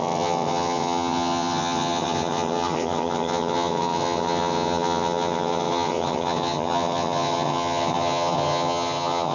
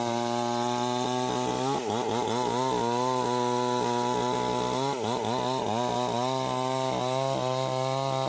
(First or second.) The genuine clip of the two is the second